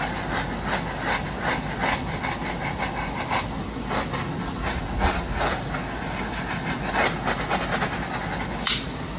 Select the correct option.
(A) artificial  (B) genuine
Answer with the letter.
B